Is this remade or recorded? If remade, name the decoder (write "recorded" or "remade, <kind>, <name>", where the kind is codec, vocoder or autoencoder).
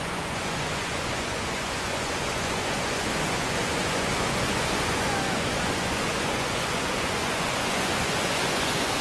remade, vocoder, Vocos